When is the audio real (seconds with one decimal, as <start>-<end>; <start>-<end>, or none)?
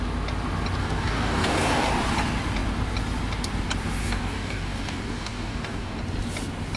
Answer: 0.0-0.8; 1.9-4.0; 6.0-6.8